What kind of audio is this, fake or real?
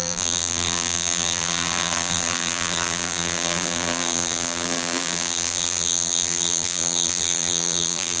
fake